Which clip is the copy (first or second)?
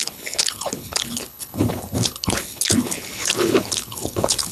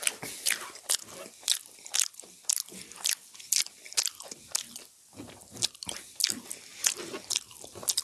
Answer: first